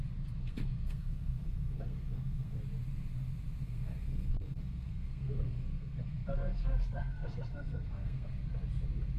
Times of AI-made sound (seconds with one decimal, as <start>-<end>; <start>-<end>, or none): 0.4-2.6; 3.6-8.3

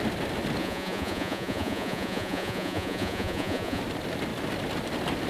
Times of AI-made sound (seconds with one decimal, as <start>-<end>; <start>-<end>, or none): 0.6-3.8

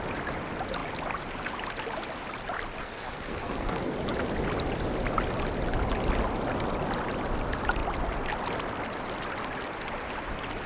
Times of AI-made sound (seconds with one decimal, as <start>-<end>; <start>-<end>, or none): 2.8-3.9

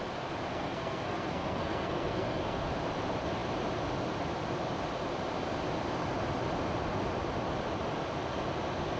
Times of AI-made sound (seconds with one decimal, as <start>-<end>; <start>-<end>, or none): 0.5-2.7

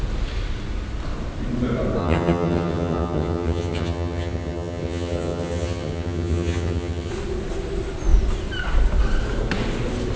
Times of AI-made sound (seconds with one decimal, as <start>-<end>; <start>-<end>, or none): 2.0-7.1